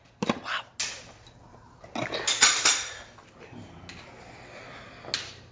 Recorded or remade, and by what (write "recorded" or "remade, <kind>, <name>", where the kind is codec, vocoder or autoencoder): recorded